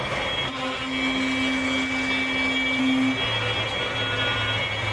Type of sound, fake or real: real